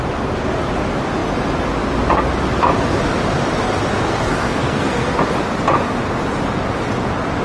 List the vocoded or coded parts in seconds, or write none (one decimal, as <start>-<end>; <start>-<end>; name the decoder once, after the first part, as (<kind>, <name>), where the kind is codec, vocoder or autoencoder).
4.1-5.2 (codec, SNAC)